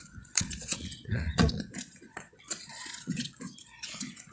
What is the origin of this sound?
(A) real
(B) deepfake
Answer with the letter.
B